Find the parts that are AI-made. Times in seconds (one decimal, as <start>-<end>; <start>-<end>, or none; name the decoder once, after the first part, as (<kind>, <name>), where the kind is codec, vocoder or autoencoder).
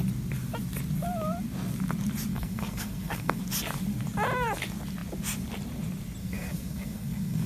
2.3-3.4 (codec, SNAC); 6.2-7.5